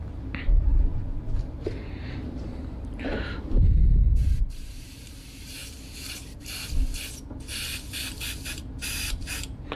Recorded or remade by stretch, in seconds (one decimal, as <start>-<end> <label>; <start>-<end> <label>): 0.0-3.8 remade; 3.8-4.4 recorded; 4.4-5.6 remade; 5.6-8.9 recorded; 8.9-9.8 remade